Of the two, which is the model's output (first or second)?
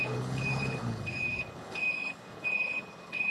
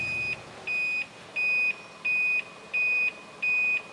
first